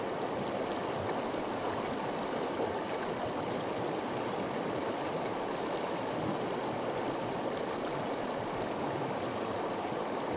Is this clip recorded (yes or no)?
yes